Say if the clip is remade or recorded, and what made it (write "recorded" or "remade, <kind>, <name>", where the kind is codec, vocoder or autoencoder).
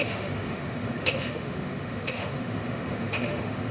remade, autoencoder, DAC-VAE